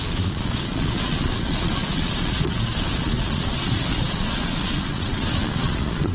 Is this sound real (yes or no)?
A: no